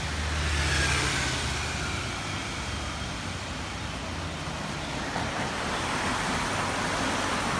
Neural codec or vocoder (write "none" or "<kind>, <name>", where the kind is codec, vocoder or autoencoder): none